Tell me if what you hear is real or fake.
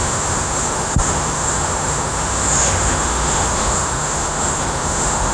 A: fake